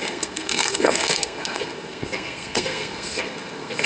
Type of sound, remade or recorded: remade